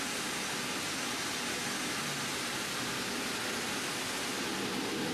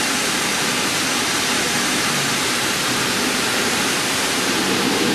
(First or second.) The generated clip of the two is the second